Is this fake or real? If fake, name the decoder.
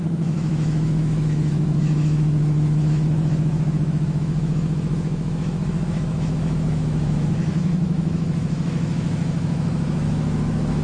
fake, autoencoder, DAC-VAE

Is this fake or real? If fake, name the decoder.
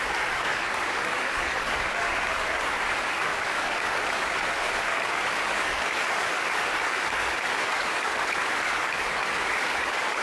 fake, codec, DAC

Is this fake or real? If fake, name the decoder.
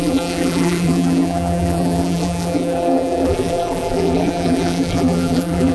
fake, vocoder, BigVGAN v2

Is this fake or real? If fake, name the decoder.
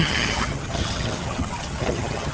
fake, vocoder, HiFi-GAN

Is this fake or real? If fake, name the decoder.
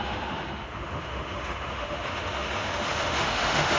fake, autoencoder, DAC-VAE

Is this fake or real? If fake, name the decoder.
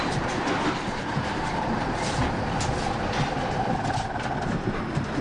real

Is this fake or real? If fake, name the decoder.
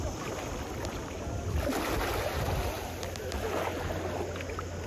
real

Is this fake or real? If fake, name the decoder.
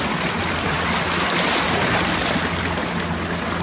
real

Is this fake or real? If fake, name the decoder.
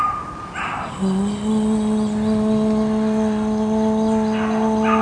real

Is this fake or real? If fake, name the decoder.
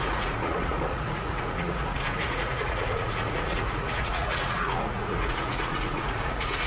fake, vocoder, Vocos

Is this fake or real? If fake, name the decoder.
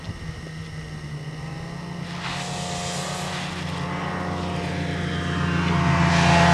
real